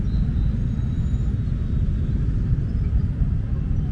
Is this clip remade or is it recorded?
recorded